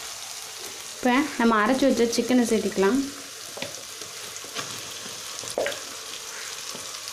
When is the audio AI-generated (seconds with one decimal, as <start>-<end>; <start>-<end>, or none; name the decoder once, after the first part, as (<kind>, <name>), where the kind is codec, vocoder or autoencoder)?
none